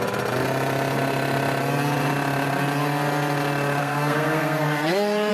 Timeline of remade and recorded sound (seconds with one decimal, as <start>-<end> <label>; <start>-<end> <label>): 0.0-3.8 recorded; 3.8-5.3 remade